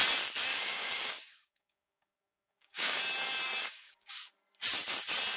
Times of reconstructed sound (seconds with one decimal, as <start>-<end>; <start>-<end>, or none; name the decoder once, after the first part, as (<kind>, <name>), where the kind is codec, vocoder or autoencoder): 0.5-3.0 (codec, DAC); 3.6-4.3